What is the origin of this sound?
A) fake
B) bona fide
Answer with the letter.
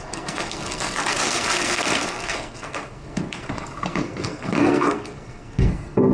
A